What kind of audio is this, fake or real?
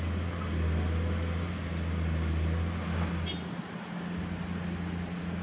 real